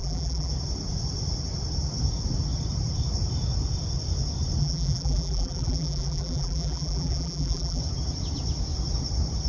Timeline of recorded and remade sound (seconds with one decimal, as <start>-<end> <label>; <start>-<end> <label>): 0.0-0.5 remade; 0.5-4.6 recorded; 4.6-7.8 remade; 7.8-9.5 recorded